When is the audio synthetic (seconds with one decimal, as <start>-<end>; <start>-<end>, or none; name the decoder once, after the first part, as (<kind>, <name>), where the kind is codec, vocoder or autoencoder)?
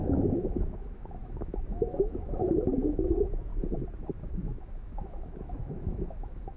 0.0-3.5 (autoencoder, DAC-VAE); 4.3-6.6